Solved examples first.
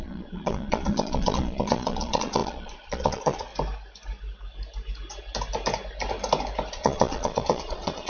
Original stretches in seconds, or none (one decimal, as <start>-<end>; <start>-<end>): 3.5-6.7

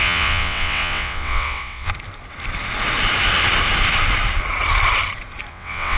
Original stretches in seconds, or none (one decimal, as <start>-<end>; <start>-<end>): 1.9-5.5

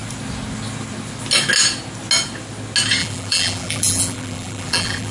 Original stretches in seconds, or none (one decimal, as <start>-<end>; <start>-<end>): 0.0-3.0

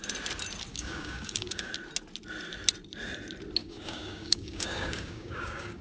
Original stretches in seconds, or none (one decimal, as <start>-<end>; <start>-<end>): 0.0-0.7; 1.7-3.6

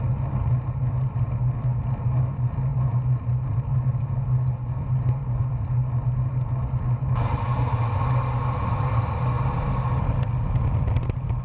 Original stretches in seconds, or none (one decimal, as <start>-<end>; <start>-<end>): 0.0-11.4

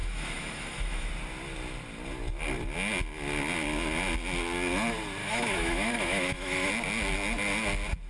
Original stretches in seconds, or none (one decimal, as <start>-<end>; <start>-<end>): 1.1-5.2; 6.7-8.1